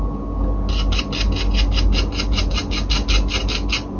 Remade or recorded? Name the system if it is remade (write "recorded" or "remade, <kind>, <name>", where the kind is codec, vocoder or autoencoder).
recorded